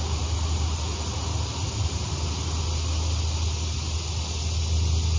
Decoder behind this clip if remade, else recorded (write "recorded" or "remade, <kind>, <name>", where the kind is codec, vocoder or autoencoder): recorded